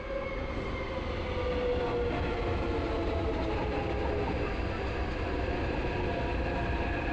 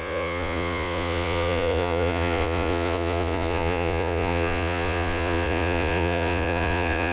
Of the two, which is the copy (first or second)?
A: second